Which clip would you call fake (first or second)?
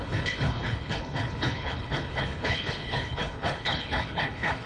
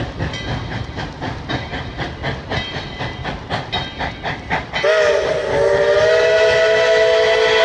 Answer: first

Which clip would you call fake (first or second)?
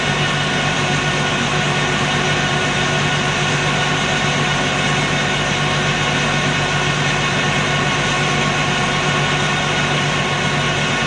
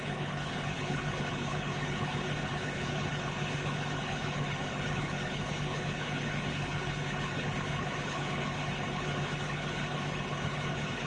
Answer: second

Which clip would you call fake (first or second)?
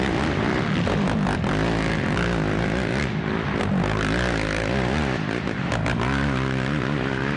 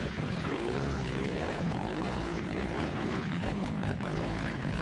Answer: second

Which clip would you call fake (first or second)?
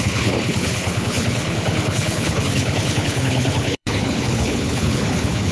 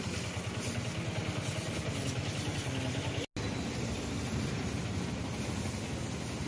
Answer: first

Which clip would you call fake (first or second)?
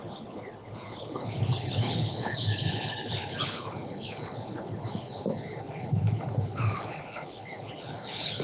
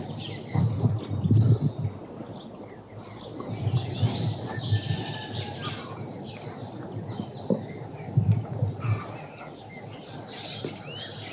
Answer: first